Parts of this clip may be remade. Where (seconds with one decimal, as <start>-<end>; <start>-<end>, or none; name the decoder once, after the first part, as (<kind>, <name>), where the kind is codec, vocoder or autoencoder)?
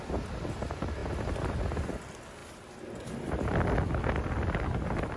none